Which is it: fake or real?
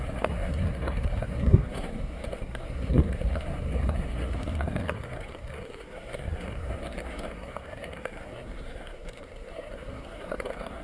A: fake